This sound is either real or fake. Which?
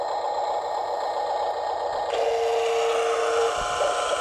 real